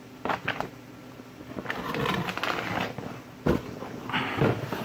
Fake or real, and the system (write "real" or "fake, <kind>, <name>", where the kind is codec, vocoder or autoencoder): real